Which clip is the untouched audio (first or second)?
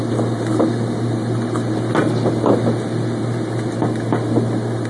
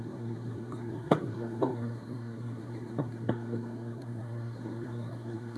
first